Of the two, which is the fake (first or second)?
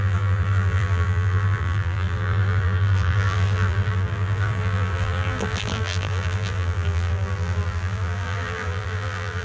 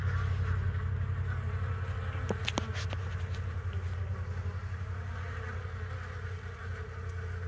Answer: first